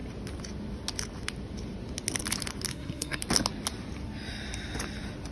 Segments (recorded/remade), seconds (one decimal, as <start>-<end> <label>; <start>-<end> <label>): 0.0-2.7 recorded; 2.7-3.2 remade; 3.2-5.3 recorded